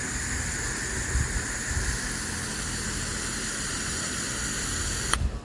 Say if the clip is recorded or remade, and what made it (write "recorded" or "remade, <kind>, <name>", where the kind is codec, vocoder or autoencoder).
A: recorded